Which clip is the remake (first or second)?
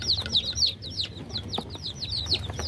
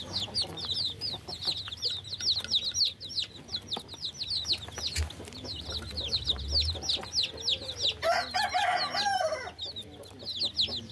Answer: first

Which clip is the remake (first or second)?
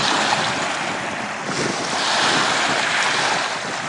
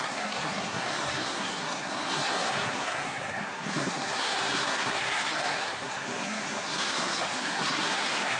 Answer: second